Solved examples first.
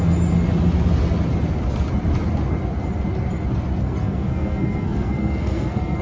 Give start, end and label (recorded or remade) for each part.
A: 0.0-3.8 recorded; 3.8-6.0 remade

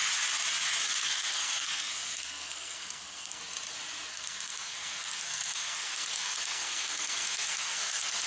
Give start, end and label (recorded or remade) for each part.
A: 0.0-1.0 recorded; 1.0-3.4 remade; 3.4-4.1 recorded; 4.1-8.3 remade

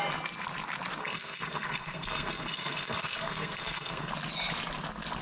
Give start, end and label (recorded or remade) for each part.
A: 0.0-1.0 recorded; 1.0-4.1 remade; 4.1-5.2 recorded

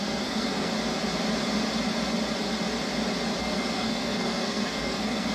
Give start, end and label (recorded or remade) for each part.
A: 0.0-0.7 remade; 0.7-3.4 recorded; 3.4-5.3 remade